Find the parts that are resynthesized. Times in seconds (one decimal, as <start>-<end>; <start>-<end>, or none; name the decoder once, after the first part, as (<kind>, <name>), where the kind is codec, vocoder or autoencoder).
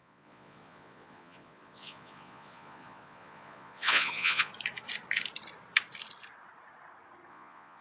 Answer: 0.0-4.5 (vocoder, Vocos); 7.3-7.8